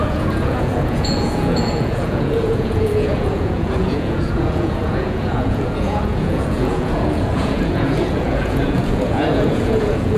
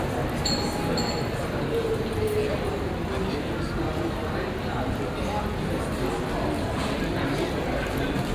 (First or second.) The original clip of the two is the second